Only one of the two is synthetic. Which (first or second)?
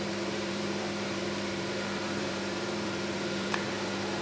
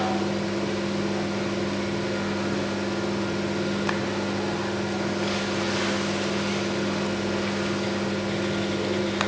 first